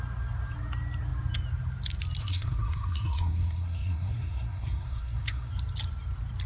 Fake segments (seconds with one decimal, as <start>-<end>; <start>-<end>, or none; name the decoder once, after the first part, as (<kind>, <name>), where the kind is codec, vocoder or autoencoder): 2.2-5.5 (codec, SNAC)

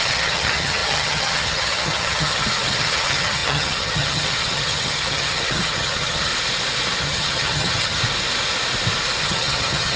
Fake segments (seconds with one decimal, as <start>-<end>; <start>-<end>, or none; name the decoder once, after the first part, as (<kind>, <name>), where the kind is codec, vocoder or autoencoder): 0.0-6.3 (vocoder, HiFi-GAN); 7.0-8.0; 9.2-10.0

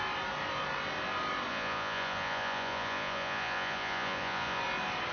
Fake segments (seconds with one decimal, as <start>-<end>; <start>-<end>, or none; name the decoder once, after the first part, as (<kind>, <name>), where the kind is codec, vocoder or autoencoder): 1.5-4.6 (vocoder, Vocos)

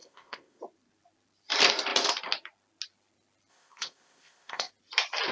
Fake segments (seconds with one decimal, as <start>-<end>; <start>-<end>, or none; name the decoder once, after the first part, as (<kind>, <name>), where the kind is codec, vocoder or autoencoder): 0.0-0.6 (codec, ZipCodec); 3.5-4.7